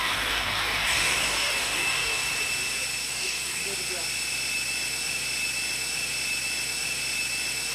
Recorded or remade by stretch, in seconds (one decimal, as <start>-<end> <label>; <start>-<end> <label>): 0.0-2.2 remade; 2.2-3.1 recorded; 3.1-3.6 remade; 3.6-7.7 recorded